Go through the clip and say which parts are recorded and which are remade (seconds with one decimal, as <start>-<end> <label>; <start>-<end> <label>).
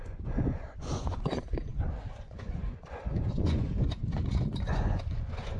0.0-5.6 remade